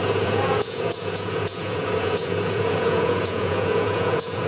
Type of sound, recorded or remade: remade